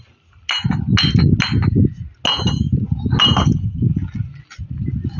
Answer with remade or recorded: recorded